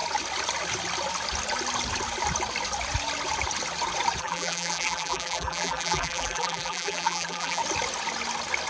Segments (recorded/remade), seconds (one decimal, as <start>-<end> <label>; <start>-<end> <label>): 0.0-4.2 recorded; 4.2-7.6 remade; 7.6-8.7 recorded